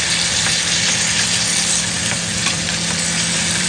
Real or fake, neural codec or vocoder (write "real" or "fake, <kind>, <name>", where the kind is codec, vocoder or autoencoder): real